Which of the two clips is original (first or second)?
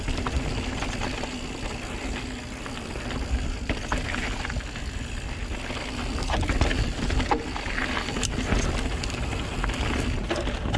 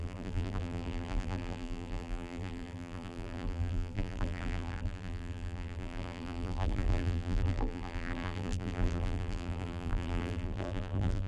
first